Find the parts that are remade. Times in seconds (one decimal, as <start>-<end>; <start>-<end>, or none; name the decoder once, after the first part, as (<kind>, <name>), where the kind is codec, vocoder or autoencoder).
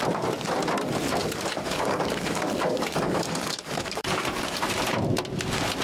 1.2-4.6 (codec, DAC)